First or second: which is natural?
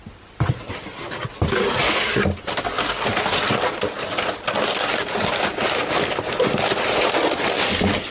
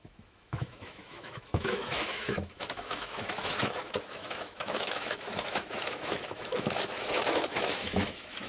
first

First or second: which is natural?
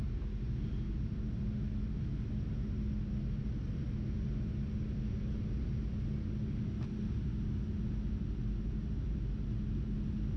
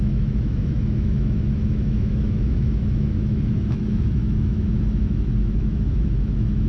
first